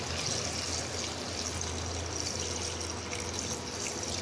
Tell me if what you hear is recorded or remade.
recorded